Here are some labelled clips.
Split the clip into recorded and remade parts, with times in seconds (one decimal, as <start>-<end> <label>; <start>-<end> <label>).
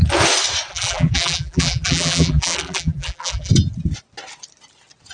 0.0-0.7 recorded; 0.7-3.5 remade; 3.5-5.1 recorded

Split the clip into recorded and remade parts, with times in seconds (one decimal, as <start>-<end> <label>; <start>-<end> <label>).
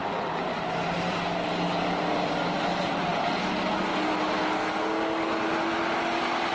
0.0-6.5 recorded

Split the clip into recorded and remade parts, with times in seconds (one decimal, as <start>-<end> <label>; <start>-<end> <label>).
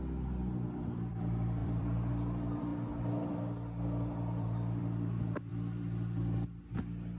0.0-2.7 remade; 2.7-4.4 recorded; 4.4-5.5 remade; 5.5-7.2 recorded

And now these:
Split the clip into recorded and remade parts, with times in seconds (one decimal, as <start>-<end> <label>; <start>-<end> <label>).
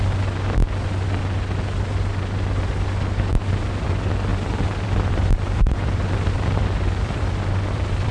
0.0-4.3 recorded; 4.3-8.1 remade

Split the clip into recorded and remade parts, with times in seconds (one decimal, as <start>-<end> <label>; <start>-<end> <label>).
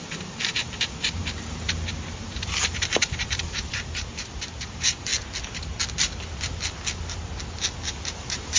0.0-5.1 remade; 5.1-7.9 recorded; 7.9-8.6 remade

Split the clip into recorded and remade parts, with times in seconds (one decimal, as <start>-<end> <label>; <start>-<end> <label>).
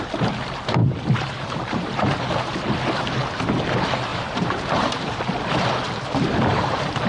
0.0-0.8 recorded; 0.8-2.2 remade; 2.2-4.1 recorded; 4.1-5.2 remade; 5.2-6.5 recorded; 6.5-7.1 remade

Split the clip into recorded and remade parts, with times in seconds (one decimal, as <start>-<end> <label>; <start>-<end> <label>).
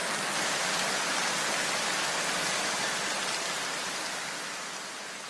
0.0-5.3 recorded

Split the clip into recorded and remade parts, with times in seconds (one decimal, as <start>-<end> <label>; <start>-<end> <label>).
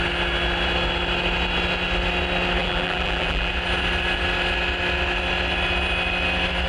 0.0-2.6 recorded; 2.6-3.5 remade; 3.5-6.7 recorded